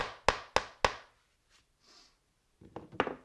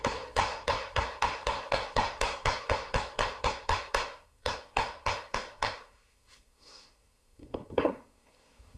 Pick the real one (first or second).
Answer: first